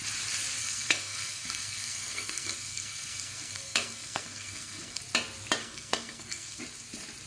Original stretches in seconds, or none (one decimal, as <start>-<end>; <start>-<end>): 0.0-0.6; 5.0-5.6; 6.6-7.3

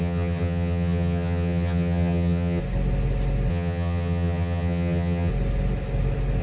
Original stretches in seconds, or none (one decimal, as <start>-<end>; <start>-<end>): 2.6-3.5; 5.3-6.4

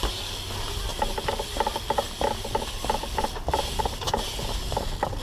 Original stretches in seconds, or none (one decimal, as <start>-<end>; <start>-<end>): 0.0-5.2